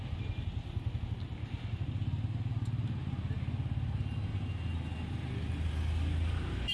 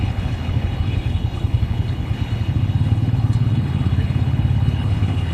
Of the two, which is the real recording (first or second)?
first